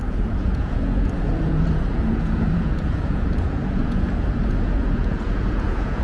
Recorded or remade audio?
remade